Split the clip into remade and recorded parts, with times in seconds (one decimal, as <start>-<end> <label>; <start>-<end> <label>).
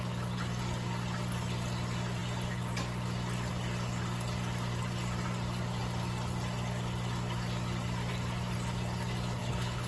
0.0-9.4 recorded; 9.4-9.9 remade